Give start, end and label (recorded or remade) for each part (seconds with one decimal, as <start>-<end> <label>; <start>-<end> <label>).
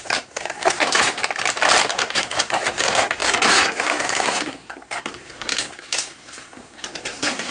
0.0-1.2 remade; 1.2-1.9 recorded; 1.9-7.5 remade